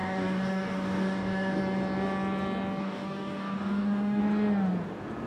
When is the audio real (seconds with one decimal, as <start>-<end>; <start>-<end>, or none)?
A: 1.6-2.8; 4.2-5.3